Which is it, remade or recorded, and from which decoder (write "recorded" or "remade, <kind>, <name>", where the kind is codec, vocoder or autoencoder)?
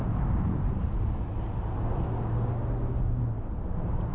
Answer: recorded